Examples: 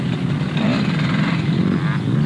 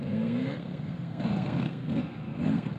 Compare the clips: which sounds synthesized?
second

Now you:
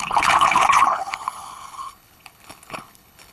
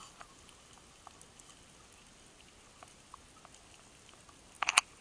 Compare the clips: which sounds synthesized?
first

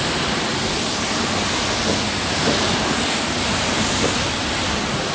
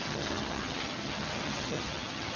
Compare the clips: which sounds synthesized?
second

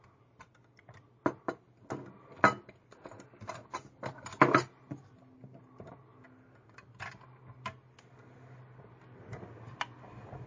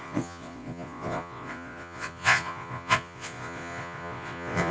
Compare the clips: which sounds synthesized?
second